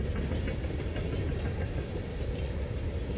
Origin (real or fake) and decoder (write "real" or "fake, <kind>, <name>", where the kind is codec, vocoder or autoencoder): real